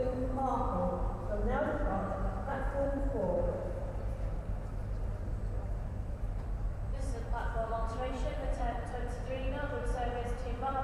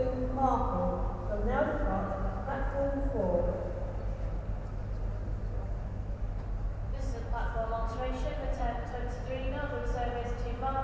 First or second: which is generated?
first